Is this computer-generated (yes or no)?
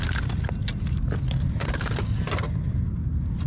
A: no